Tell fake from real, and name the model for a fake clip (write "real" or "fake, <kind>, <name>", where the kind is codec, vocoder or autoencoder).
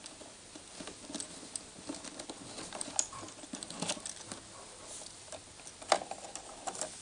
real